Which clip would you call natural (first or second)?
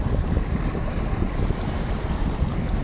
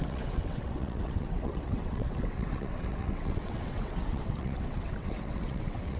first